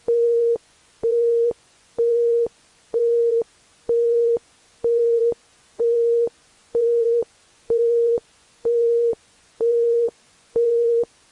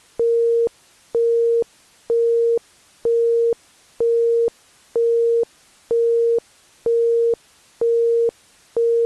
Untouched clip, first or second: second